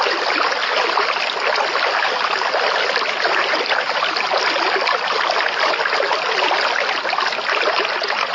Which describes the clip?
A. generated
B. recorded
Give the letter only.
B